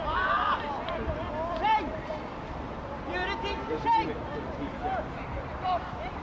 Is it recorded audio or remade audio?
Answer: remade